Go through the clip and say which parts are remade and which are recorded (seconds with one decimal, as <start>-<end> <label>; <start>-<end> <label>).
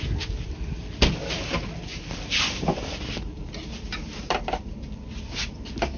0.0-1.9 recorded; 1.9-4.6 remade; 4.6-6.0 recorded